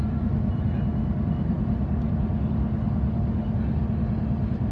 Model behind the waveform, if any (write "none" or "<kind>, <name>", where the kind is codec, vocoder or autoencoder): none